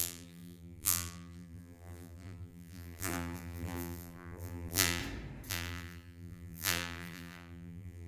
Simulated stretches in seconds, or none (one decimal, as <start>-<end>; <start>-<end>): 0.0-5.0; 5.5-8.1

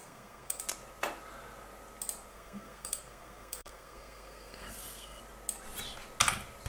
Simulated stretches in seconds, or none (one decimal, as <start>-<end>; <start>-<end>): 0.0-0.6; 2.3-5.2

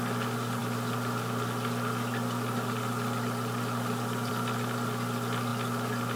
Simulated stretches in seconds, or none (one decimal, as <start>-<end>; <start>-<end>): none

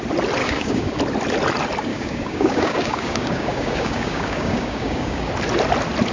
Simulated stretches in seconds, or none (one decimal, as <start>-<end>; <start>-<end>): 0.4-1.0; 1.9-5.3

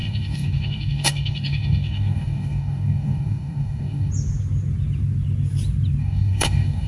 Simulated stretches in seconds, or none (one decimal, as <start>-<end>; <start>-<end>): 0.0-4.1; 6.0-6.9

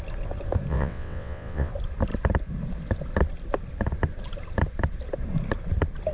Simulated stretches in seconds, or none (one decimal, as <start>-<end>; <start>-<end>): 0.7-1.7

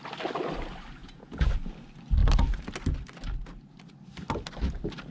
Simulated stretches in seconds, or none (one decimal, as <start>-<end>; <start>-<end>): 1.0-1.5

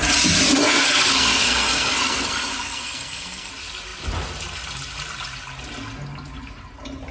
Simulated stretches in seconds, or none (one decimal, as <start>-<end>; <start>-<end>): 0.6-3.5